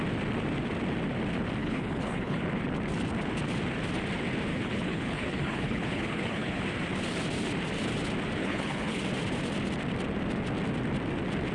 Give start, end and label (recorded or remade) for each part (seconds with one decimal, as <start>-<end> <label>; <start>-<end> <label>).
0.0-1.6 recorded; 1.6-2.4 remade; 2.4-4.5 recorded; 4.5-6.6 remade; 6.6-8.4 recorded; 8.4-9.0 remade; 9.0-11.5 recorded